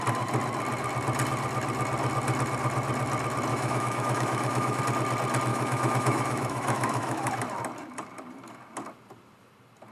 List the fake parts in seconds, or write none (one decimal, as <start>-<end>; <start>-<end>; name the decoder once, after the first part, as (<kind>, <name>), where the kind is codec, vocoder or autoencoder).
3.5-4.8 (autoencoder, DAC-VAE); 5.5-7.3